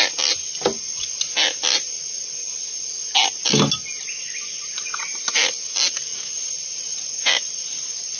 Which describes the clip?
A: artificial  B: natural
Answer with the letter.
B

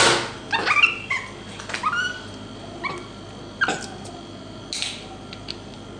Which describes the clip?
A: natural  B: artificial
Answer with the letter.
A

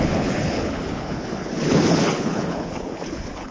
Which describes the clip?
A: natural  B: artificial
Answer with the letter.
B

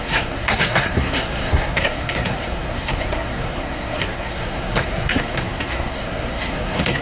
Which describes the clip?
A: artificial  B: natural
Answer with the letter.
A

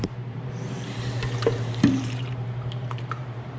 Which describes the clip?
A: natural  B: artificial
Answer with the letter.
B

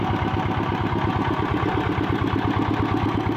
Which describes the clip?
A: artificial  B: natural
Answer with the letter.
B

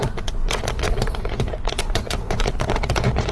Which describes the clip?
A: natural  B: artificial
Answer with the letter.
B